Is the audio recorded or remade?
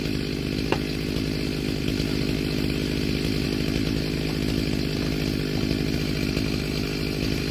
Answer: recorded